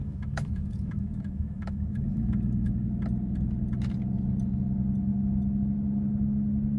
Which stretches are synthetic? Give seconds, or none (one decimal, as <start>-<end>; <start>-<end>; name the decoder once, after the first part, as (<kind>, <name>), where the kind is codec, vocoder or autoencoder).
0.0-2.7 (autoencoder, DAC-VAE)